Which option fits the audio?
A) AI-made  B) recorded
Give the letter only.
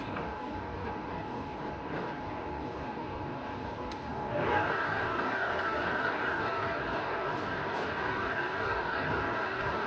A